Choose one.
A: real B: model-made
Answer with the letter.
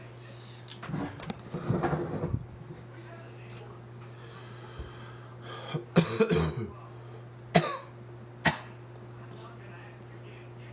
A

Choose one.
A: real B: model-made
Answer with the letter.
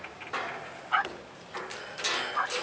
A